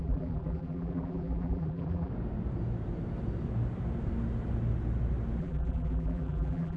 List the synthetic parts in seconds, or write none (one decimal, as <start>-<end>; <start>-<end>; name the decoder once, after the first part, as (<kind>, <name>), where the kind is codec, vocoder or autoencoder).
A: 0.0-2.1 (vocoder, BigVGAN v2); 5.4-6.8